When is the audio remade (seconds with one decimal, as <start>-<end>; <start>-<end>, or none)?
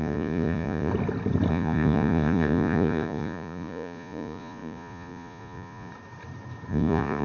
0.0-0.9; 1.5-5.9; 6.7-7.2